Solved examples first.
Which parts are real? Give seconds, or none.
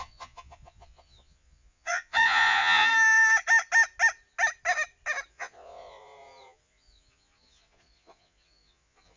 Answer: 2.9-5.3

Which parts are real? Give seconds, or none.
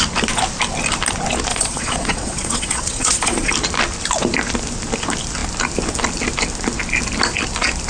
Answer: 0.0-1.5; 3.5-7.9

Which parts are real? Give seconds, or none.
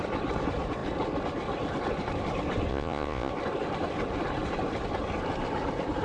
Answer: 0.0-2.7; 3.3-6.0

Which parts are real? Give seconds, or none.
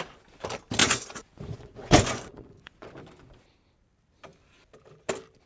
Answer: 0.0-0.8; 2.9-5.5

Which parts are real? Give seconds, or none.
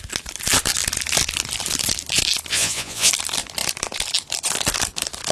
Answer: 0.0-2.5; 3.1-5.3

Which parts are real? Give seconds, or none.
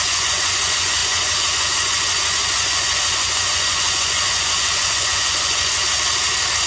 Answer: 5.8-6.7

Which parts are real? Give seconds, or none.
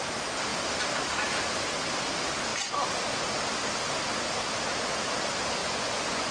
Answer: 0.0-5.6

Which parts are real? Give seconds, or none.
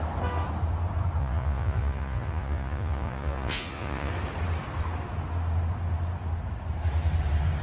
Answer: 0.0-1.2; 4.1-7.6